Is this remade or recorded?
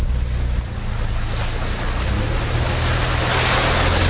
recorded